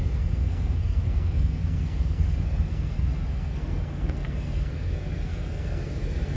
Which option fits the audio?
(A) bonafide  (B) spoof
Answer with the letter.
B